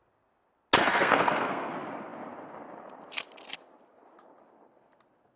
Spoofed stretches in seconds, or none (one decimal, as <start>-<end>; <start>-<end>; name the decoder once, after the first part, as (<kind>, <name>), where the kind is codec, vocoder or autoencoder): 0.8-1.7 (codec, SNAC)